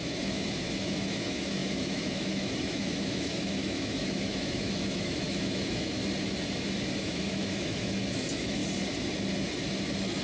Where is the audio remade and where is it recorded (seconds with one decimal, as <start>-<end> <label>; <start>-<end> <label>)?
0.0-6.0 remade; 6.0-7.0 recorded; 7.0-8.6 remade; 8.6-10.2 recorded